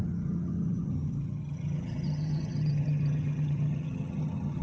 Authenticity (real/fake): fake